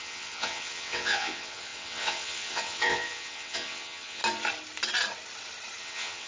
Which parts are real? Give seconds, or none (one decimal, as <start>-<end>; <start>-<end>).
4.2-5.8